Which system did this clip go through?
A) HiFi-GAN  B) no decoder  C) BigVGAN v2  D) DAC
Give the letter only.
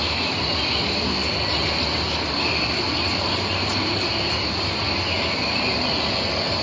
B